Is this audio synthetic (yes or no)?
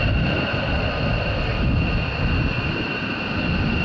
no